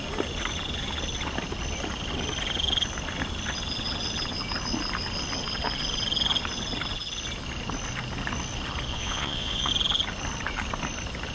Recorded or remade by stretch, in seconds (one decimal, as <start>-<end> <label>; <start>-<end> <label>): 0.0-8.9 recorded; 8.9-9.7 remade; 9.7-11.3 recorded